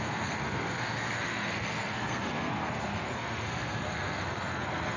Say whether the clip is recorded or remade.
remade